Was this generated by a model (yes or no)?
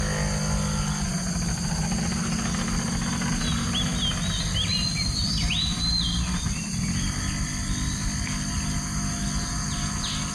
no